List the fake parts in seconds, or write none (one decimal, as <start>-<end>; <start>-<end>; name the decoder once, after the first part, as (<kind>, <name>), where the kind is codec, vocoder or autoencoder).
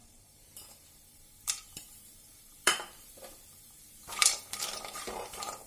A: 0.0-5.7 (vocoder, BigVGAN v2)